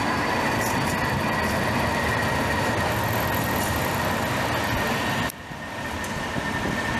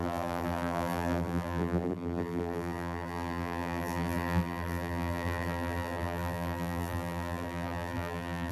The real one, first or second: first